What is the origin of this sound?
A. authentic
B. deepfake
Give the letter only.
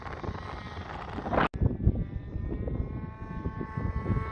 A